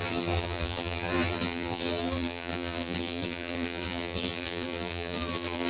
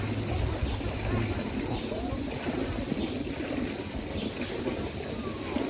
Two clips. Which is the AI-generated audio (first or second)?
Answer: first